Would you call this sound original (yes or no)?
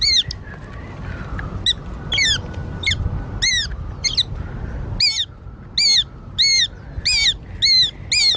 yes